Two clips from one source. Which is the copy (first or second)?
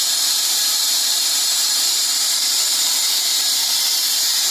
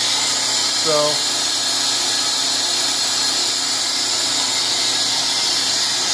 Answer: first